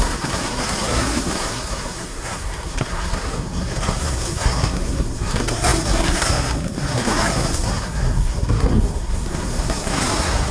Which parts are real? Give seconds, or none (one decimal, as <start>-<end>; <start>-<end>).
none

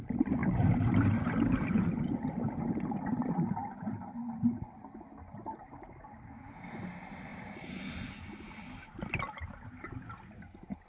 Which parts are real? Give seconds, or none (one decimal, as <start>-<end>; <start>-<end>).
0.0-0.4; 2.5-7.3; 7.9-10.9